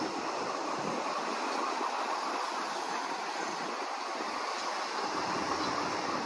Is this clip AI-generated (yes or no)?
no